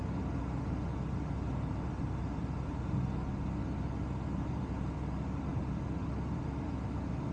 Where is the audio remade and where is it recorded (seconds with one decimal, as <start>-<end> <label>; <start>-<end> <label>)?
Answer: 0.0-7.3 recorded

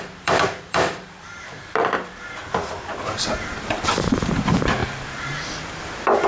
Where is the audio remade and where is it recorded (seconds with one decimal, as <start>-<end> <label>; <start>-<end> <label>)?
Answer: 0.0-6.3 remade